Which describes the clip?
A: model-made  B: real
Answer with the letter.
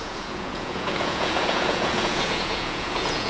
A